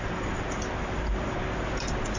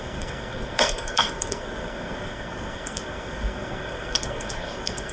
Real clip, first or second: first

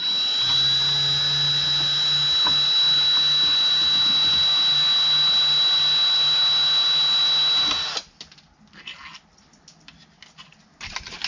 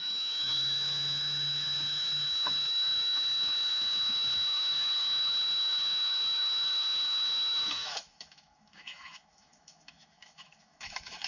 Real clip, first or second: first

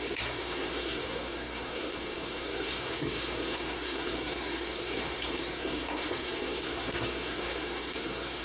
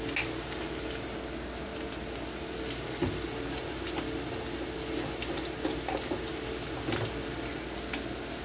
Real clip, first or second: second